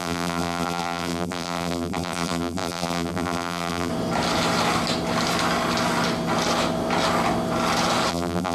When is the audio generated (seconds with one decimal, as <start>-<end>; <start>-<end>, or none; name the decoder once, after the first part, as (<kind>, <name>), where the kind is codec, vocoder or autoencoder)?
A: 0.0-3.9 (vocoder, BigVGAN v2); 8.1-8.5